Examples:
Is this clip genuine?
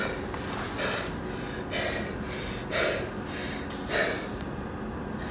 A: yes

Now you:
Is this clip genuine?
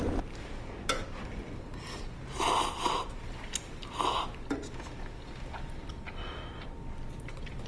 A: yes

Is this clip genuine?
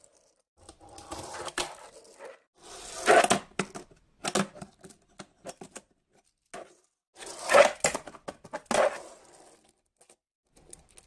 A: yes